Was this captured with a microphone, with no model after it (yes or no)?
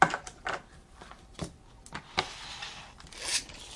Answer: yes